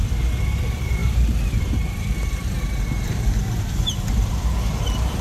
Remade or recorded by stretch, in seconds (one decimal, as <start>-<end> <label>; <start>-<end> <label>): 0.0-5.2 remade